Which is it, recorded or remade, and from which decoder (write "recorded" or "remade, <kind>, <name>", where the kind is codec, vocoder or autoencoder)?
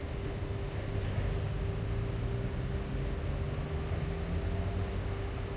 recorded